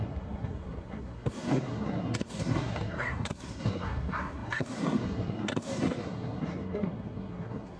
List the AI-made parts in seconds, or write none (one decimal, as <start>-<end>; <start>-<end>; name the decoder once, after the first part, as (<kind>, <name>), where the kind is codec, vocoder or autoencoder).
0.0-7.8 (codec, SNAC)